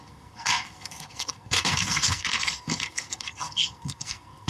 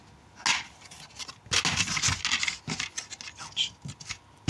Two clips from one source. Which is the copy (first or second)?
first